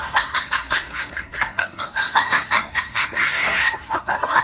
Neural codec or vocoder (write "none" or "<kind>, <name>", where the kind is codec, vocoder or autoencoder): codec, SNAC